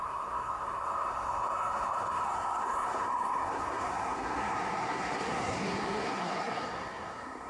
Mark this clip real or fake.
fake